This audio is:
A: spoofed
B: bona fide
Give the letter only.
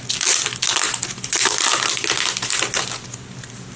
B